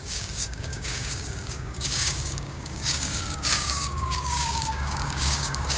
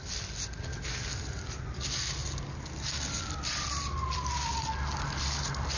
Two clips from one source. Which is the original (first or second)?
second